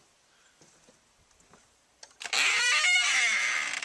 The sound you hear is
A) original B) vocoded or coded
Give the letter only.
A